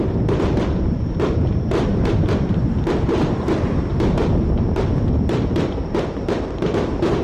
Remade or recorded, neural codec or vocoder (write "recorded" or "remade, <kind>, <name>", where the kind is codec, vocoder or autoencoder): remade, vocoder, BigVGAN v2